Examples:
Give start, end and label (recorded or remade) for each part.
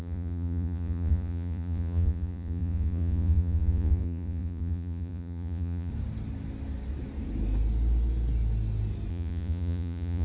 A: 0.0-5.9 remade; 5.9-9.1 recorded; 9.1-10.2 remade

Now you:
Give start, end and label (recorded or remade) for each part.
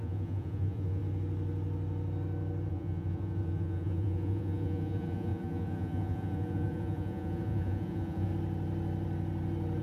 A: 0.0-1.0 remade; 1.0-2.7 recorded; 2.7-8.3 remade; 8.3-9.8 recorded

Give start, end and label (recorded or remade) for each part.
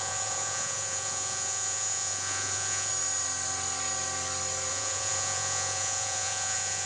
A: 0.0-2.9 remade; 2.9-4.7 recorded; 4.7-6.9 remade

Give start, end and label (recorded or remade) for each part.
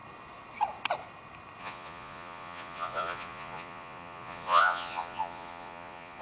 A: 0.0-1.6 recorded; 1.6-6.2 remade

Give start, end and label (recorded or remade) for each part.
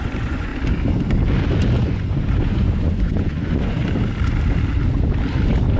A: 0.0-0.5 remade; 0.5-1.8 recorded; 1.8-3.8 remade; 3.8-5.8 recorded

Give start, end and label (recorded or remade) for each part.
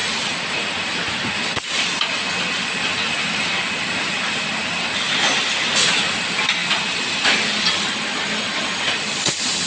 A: 0.0-9.7 recorded